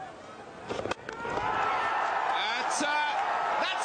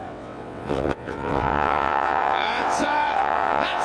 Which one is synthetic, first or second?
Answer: second